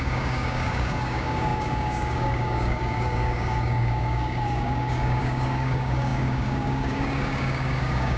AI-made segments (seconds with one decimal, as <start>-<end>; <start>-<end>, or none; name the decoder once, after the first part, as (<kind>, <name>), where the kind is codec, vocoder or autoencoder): 0.0-8.2 (codec, DAC)